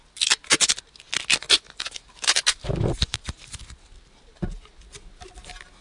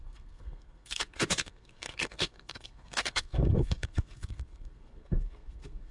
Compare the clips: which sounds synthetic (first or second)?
second